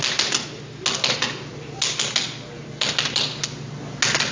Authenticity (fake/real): real